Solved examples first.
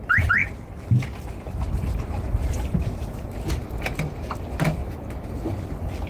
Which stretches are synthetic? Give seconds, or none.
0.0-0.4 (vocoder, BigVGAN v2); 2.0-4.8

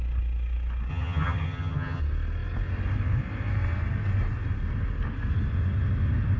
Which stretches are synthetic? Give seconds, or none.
0.9-2.0 (vocoder, HiFi-GAN)

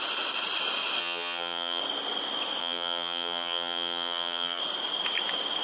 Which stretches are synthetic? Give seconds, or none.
1.0-1.8 (vocoder, HiFi-GAN); 2.6-4.6

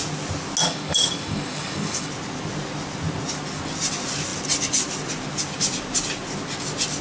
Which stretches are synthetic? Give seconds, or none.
0.6-2.1 (codec, DAC)

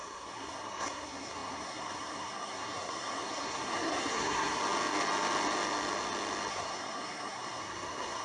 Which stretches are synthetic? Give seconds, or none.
0.0-4.6 (codec, SNAC); 6.5-8.2

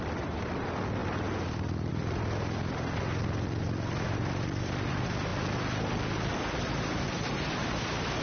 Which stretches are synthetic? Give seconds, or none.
0.0-5.3 (vocoder, BigVGAN v2)